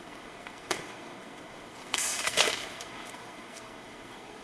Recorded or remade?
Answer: remade